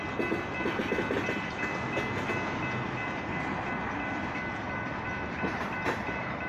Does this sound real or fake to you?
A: real